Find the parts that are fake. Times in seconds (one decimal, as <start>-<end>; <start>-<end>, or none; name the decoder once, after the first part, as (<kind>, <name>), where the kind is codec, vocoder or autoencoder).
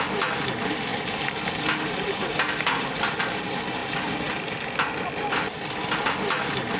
none